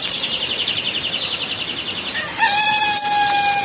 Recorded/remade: recorded